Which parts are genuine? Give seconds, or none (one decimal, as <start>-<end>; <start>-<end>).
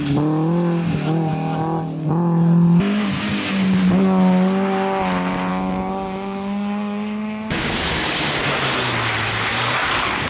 0.0-5.5; 8.4-10.3